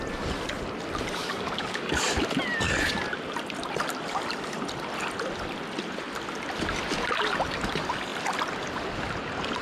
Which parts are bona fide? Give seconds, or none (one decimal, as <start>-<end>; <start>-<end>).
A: 0.0-1.2; 2.0-9.6